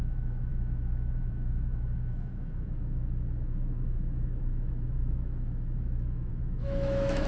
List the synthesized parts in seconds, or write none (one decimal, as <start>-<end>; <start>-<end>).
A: 0.0-7.3

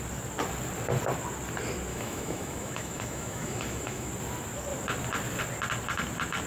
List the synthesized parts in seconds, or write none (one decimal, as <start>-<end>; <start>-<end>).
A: 1.9-4.1